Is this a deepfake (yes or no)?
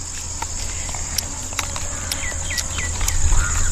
no